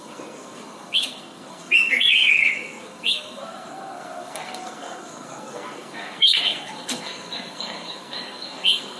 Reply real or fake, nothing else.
fake